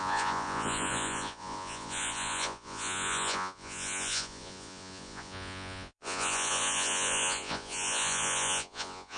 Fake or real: fake